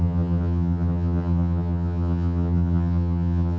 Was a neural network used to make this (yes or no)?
yes